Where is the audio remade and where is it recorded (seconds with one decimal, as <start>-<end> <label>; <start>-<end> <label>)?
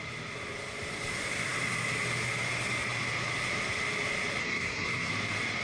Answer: 0.0-4.4 recorded; 4.4-5.1 remade; 5.1-5.6 recorded